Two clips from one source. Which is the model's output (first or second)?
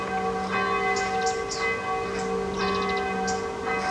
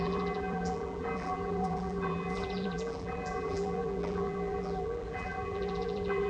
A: second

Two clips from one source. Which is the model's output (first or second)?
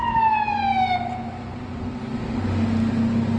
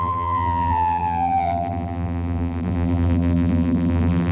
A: second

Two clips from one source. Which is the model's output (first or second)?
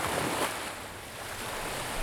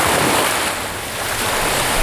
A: first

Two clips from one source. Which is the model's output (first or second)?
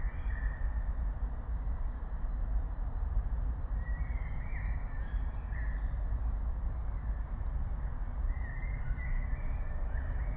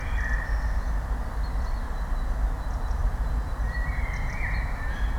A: first